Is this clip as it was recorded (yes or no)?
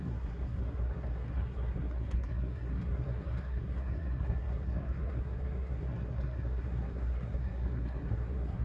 no